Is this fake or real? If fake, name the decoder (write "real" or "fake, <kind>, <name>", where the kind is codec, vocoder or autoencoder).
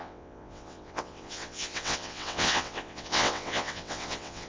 fake, vocoder, WaveNeXt